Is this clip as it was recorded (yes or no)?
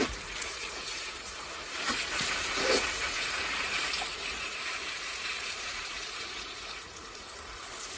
no